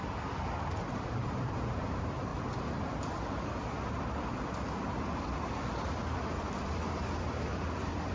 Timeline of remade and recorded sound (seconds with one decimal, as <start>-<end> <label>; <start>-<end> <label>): 0.0-0.9 recorded; 0.9-2.3 remade; 2.3-7.2 recorded; 7.2-8.1 remade